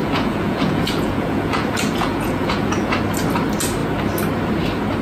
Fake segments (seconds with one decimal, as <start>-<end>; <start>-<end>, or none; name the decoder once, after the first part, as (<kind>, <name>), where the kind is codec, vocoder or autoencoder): 0.0-2.9 (vocoder, Vocos)